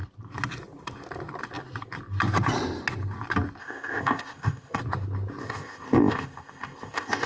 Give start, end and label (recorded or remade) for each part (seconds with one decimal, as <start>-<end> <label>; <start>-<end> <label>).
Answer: 0.0-3.6 recorded; 3.6-4.8 remade; 4.8-5.4 recorded; 5.4-7.3 remade